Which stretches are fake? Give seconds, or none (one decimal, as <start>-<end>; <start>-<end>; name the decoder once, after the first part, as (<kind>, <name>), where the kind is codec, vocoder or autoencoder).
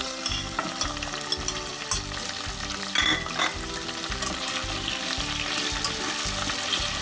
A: none